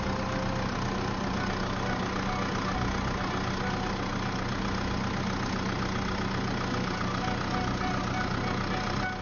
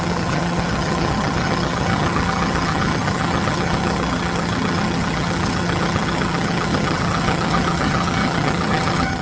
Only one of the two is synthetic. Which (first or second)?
second